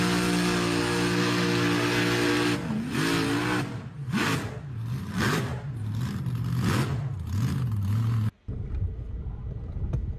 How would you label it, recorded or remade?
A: recorded